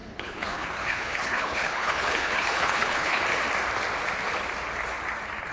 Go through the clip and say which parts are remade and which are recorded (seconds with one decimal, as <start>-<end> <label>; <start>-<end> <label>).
0.0-3.2 remade; 3.2-5.5 recorded